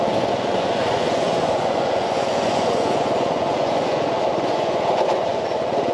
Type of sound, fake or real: fake